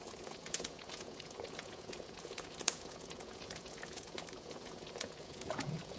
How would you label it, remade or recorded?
remade